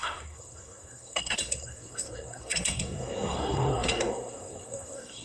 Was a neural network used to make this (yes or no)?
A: yes